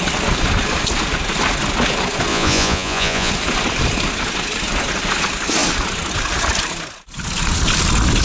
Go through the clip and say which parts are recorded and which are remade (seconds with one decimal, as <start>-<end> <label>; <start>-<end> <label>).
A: 0.0-2.3 recorded; 2.3-3.3 remade; 3.3-8.2 recorded